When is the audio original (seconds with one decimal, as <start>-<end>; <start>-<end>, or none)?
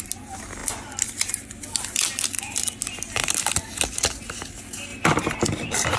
0.0-4.9